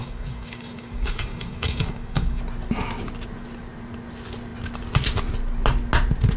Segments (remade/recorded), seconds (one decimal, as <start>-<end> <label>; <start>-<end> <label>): 0.0-2.4 remade; 2.4-6.4 recorded